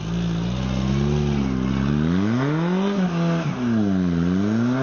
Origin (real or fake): real